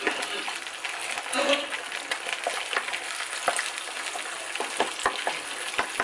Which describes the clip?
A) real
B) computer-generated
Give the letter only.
A